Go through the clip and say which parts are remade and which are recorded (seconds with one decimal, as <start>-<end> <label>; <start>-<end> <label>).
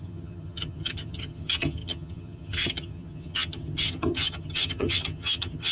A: 0.0-5.7 remade